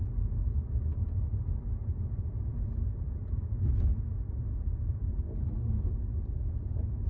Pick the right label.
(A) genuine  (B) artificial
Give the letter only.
B